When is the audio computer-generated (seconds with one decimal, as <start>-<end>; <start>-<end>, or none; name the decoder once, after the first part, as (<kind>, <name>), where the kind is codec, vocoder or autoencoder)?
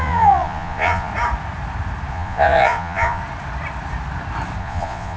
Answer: 0.0-1.1 (vocoder, Vocos); 2.1-3.2; 4.6-5.2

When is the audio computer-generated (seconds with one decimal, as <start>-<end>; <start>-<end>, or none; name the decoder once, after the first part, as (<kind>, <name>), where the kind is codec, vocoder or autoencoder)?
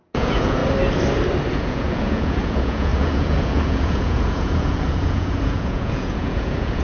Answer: 0.0-0.6 (vocoder, Vocos); 1.5-6.8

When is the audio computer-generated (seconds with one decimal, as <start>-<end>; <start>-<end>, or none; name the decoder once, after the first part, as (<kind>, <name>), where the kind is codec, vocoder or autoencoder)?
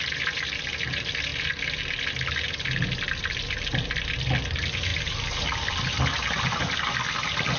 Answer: none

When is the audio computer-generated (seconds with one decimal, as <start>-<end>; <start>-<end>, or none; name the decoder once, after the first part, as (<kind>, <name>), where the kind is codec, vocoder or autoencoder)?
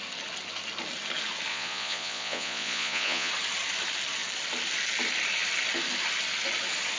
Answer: 1.5-3.3 (vocoder, Vocos)